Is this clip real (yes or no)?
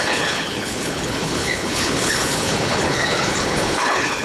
no